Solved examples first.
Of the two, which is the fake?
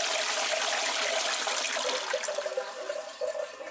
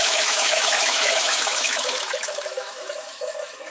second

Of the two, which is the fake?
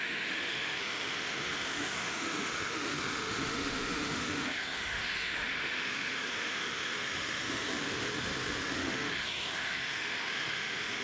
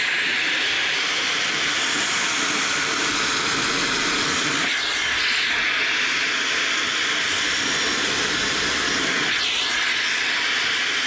first